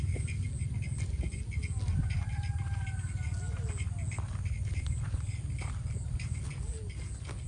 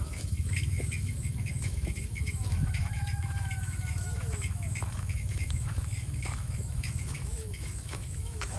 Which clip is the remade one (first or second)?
second